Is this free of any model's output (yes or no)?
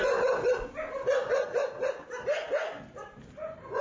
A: yes